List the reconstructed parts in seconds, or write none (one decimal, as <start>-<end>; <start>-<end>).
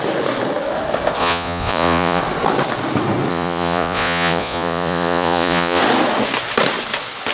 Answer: 1.2-2.2; 3.3-5.8